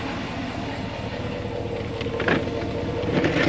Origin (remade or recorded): recorded